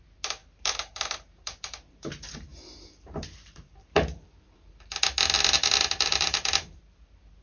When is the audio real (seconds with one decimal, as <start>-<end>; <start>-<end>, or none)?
0.0-0.4; 4.7-6.1; 6.8-7.4